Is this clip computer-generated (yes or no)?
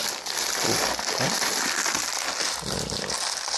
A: no